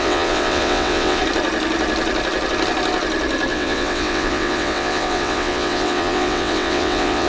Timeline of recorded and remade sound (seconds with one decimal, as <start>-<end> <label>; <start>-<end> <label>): 0.0-1.2 remade; 1.2-3.5 recorded; 3.5-7.3 remade

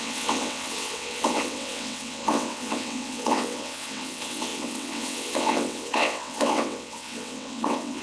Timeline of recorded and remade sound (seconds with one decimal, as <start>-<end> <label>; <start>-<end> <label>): 0.0-8.0 remade